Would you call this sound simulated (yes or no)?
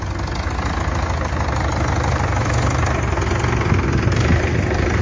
no